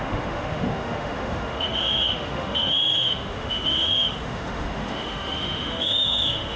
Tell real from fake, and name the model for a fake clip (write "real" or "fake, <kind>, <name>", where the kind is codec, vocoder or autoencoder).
fake, autoencoder, DAC-VAE